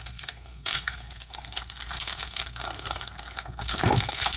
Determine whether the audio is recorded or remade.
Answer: remade